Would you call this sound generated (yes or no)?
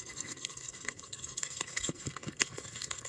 yes